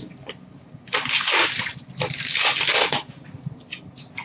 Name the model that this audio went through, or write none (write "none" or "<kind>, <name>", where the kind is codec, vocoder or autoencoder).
none